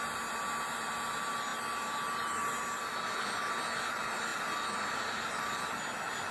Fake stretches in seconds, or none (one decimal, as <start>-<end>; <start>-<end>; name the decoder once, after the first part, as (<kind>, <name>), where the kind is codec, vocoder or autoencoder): none